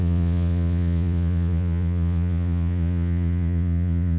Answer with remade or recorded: remade